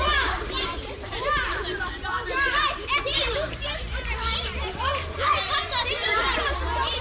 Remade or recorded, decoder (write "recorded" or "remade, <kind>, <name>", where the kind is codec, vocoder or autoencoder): remade, vocoder, BigVGAN v2